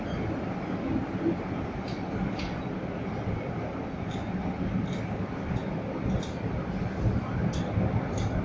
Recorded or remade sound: recorded